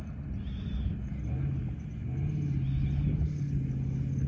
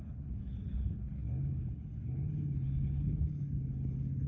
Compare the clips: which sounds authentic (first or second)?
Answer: first